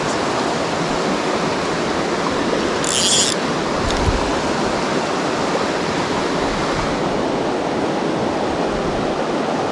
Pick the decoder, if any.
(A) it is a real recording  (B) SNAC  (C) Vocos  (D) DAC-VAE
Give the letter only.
A